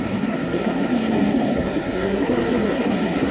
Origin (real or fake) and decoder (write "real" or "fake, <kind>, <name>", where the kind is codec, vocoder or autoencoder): fake, codec, SNAC